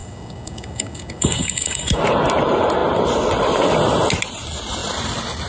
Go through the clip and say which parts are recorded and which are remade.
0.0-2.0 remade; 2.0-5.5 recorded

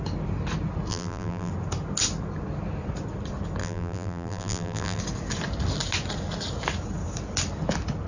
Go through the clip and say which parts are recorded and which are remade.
0.0-0.9 recorded; 0.9-1.5 remade; 1.5-3.6 recorded; 3.6-5.0 remade; 5.0-8.1 recorded

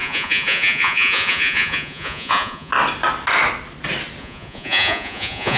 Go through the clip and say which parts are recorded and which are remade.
0.0-2.7 remade; 2.7-4.2 recorded; 4.2-5.6 remade

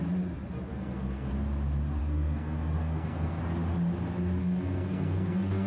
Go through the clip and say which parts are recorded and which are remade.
0.0-0.7 recorded; 0.7-1.3 remade; 1.3-2.0 recorded; 2.0-3.4 remade; 3.4-4.4 recorded; 4.4-5.7 remade

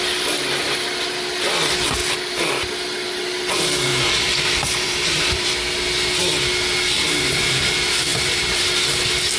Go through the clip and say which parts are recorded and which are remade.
0.0-3.9 recorded; 3.9-5.5 remade; 5.5-8.1 recorded; 8.1-8.6 remade; 8.6-9.4 recorded

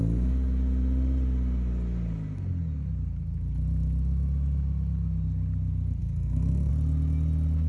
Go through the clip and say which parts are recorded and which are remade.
0.0-6.0 recorded; 6.0-6.7 remade; 6.7-7.7 recorded

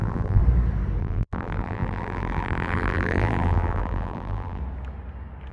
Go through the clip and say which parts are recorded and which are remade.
0.0-0.4 remade; 0.4-1.0 recorded; 1.0-4.6 remade; 4.6-5.5 recorded

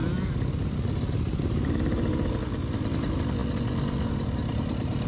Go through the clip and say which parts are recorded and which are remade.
0.0-5.1 recorded